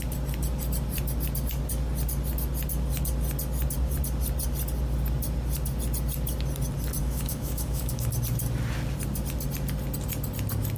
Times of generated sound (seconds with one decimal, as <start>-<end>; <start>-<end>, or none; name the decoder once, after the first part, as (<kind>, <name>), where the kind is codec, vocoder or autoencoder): 7.0-8.1 (autoencoder, DAC-VAE)